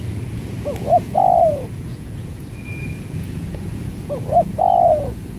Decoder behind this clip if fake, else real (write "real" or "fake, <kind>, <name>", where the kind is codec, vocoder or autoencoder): fake, vocoder, Vocos